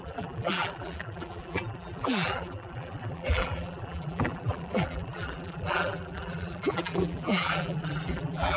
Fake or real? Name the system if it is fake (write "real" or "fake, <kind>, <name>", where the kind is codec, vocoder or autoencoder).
fake, vocoder, BigVGAN v2